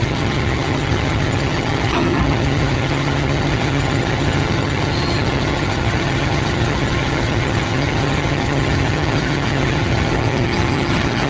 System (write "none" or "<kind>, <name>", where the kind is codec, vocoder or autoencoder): vocoder, HiFi-GAN